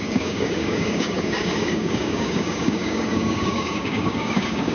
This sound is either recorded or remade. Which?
remade